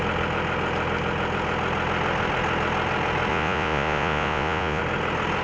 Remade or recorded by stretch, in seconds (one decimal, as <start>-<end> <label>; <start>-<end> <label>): 0.0-3.3 recorded; 3.3-4.8 remade; 4.8-5.4 recorded